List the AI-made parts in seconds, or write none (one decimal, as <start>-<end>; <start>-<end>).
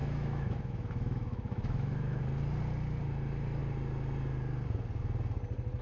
0.0-2.2